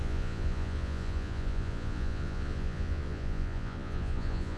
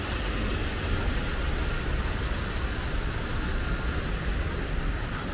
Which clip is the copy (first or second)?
first